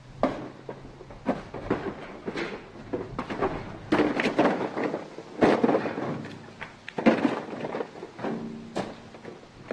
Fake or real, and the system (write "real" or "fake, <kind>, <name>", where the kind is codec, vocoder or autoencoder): real